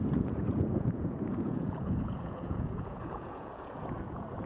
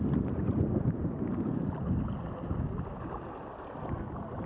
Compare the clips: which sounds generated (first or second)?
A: first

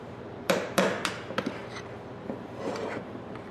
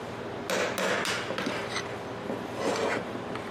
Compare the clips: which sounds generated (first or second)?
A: first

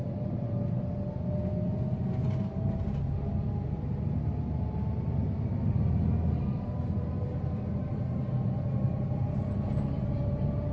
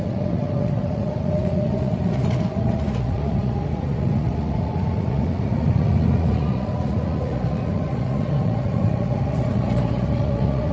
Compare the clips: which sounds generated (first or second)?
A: second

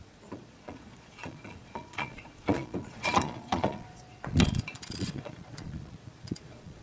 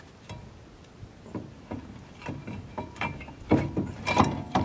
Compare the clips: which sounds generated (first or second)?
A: first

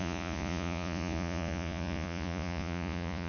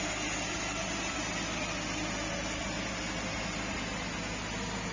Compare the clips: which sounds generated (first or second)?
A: first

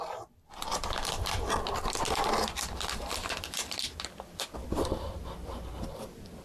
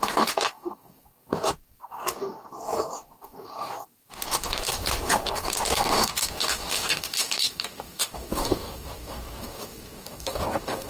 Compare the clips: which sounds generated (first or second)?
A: second